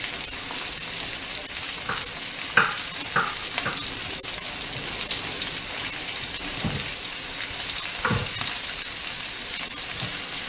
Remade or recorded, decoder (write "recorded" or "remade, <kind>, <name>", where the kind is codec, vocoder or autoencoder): recorded